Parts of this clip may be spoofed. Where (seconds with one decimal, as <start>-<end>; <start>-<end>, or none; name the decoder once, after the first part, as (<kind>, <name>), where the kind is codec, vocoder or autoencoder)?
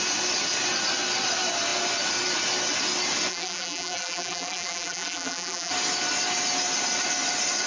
3.3-5.7 (vocoder, BigVGAN v2)